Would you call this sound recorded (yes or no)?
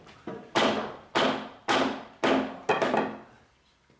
yes